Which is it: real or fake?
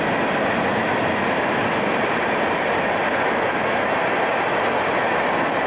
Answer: real